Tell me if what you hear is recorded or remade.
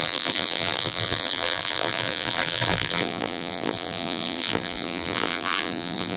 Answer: remade